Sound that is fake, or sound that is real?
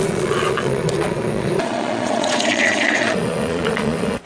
fake